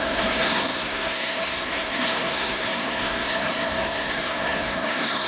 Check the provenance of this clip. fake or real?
fake